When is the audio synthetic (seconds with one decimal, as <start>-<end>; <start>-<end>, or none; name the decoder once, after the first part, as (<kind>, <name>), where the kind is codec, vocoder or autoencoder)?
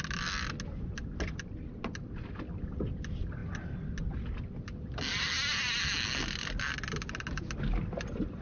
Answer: none